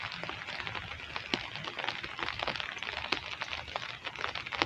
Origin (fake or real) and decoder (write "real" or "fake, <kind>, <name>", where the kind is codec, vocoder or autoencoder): real